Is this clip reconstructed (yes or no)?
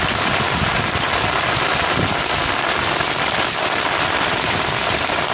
yes